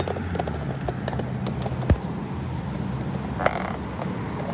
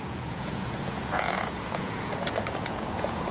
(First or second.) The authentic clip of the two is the first